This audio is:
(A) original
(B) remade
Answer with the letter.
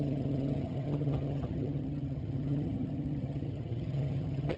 B